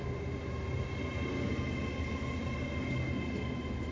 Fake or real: real